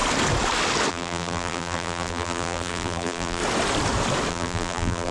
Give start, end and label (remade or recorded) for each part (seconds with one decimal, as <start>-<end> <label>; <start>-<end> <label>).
0.0-0.9 recorded; 0.9-3.4 remade; 3.4-4.3 recorded; 4.3-5.1 remade